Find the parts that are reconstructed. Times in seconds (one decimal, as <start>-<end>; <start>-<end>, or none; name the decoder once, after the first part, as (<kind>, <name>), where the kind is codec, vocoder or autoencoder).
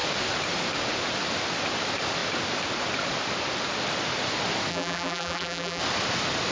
4.7-5.8 (vocoder, BigVGAN v2)